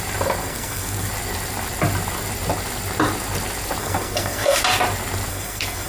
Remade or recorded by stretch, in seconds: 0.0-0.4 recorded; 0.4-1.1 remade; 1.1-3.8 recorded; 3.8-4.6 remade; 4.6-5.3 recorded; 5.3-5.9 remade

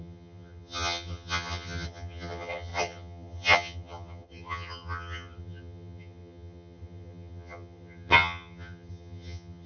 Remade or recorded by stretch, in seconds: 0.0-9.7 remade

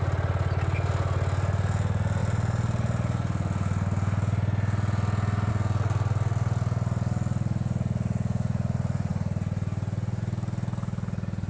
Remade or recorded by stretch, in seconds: 0.0-11.5 recorded